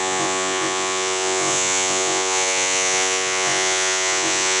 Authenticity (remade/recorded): remade